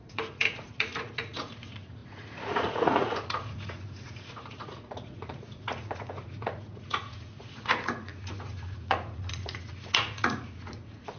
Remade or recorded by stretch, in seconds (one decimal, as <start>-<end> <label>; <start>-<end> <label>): 0.0-11.2 remade